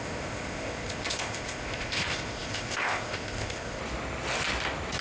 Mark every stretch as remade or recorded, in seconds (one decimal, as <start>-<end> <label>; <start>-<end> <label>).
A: 0.0-3.8 remade; 3.8-5.0 recorded

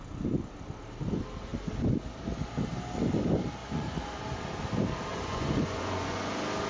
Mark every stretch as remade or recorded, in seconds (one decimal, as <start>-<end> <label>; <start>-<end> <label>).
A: 0.0-3.6 recorded; 3.6-4.2 remade; 4.2-5.1 recorded; 5.1-6.3 remade; 6.3-6.7 recorded

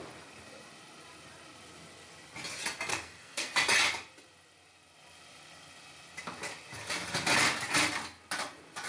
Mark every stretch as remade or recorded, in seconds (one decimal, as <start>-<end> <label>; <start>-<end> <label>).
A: 0.0-2.9 recorded; 2.9-3.5 remade; 3.5-8.9 recorded

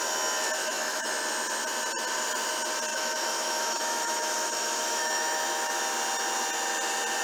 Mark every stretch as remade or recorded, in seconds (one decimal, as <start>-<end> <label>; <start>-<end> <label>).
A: 0.0-0.6 recorded; 0.6-1.1 remade; 1.1-2.9 recorded; 2.9-5.8 remade; 5.8-7.2 recorded

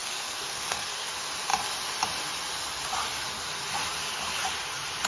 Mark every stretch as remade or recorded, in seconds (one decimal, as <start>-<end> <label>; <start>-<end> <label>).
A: 0.0-1.1 remade; 1.1-5.1 recorded

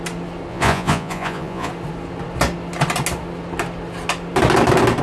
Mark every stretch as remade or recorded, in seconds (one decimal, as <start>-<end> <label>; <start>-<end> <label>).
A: 0.0-0.5 recorded; 0.5-1.7 remade; 1.7-5.0 recorded